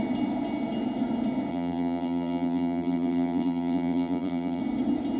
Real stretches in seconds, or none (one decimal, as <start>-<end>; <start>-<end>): 0.0-1.5; 4.6-5.2

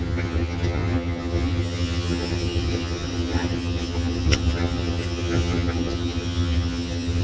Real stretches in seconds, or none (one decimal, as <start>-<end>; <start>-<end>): none

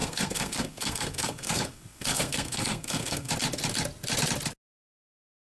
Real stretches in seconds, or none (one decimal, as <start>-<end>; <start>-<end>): 3.3-5.5

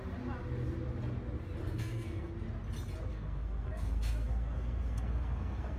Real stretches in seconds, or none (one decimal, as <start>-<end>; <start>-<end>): 0.0-1.6; 2.3-3.1